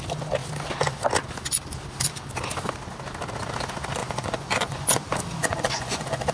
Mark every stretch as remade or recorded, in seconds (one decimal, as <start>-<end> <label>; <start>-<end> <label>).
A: 0.0-4.0 recorded; 4.0-5.0 remade; 5.0-5.4 recorded; 5.4-6.3 remade